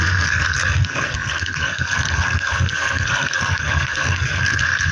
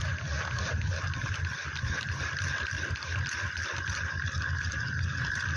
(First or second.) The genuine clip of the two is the second